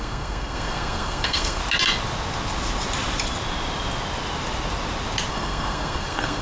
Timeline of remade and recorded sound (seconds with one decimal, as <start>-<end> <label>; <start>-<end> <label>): 0.0-1.6 remade; 1.6-5.3 recorded; 5.3-6.4 remade